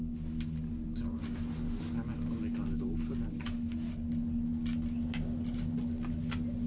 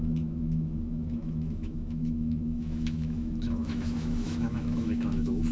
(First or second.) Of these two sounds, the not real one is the second